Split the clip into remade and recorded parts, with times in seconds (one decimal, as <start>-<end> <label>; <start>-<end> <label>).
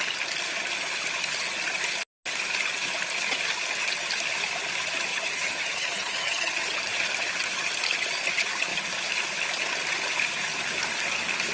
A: 0.0-5.1 recorded; 5.1-6.8 remade; 6.8-11.5 recorded